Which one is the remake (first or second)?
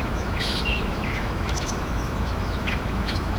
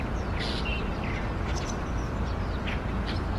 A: first